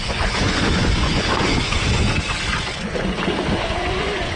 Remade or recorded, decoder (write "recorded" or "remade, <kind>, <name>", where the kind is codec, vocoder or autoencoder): remade, vocoder, Vocos